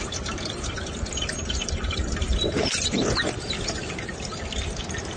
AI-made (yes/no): yes